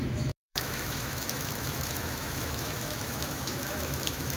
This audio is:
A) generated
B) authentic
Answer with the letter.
A